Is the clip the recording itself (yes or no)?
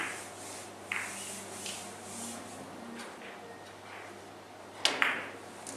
yes